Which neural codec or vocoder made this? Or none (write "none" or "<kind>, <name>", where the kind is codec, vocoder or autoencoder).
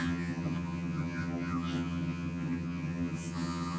vocoder, HiFi-GAN